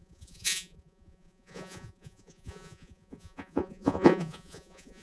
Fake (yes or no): yes